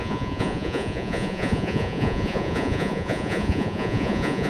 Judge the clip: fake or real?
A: fake